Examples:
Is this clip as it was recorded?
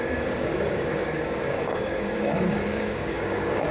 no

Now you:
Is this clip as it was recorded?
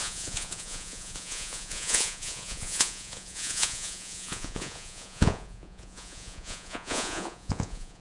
no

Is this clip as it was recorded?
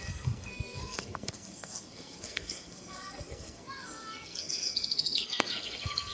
no